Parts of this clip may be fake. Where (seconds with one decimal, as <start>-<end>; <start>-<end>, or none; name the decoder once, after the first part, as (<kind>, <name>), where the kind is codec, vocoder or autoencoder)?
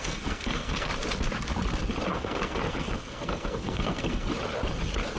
0.0-0.9 (codec, SNAC); 2.1-4.3